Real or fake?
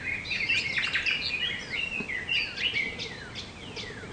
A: real